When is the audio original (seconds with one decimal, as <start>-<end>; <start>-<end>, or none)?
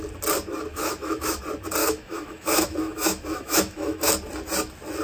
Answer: 0.0-0.7; 1.4-1.8; 4.1-5.0